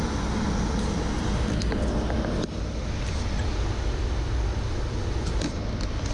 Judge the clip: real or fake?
real